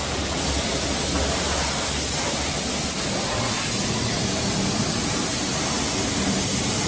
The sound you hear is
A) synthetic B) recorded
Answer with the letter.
B